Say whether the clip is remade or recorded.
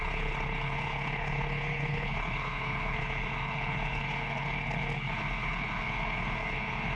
remade